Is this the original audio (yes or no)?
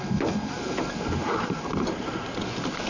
yes